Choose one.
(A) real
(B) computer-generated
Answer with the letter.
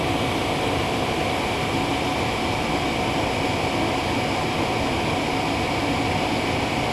A